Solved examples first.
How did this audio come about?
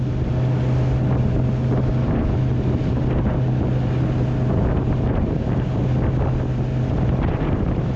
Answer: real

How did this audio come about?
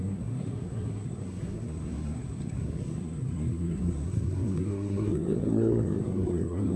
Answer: fake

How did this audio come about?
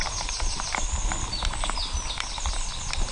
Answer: real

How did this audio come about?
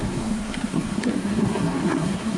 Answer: fake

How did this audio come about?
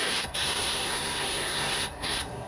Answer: fake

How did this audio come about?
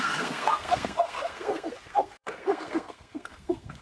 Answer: fake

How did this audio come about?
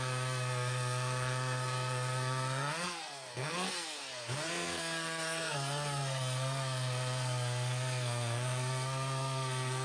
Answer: fake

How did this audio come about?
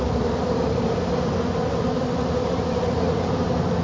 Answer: real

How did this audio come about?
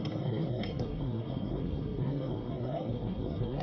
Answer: fake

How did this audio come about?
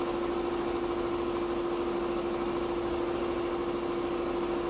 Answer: real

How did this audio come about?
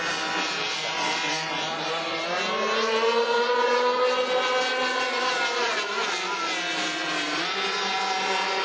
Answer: real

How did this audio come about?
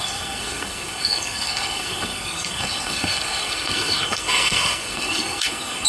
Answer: fake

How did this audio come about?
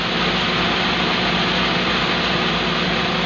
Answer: real